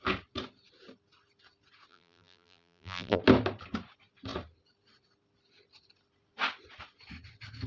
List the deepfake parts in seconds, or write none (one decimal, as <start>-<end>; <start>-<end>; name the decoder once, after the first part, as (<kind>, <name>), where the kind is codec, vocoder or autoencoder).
1.9-3.2 (vocoder, BigVGAN v2)